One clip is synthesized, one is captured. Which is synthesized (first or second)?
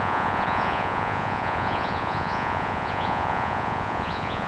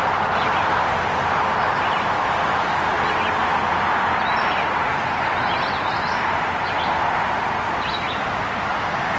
first